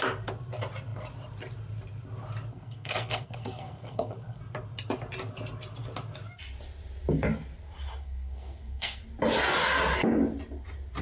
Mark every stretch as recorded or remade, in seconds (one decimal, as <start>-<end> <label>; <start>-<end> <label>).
0.0-2.5 recorded; 2.5-4.4 remade; 4.4-8.0 recorded; 8.0-9.0 remade; 9.0-11.0 recorded